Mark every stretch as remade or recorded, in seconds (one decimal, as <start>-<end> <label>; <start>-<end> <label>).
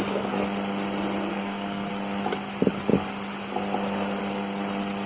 0.0-1.3 recorded; 1.3-1.9 remade; 1.9-5.1 recorded